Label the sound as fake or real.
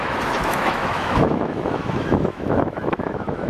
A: fake